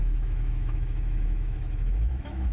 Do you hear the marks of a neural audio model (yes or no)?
yes